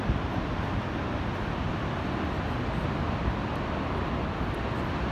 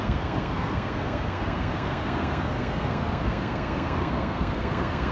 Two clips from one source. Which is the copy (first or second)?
second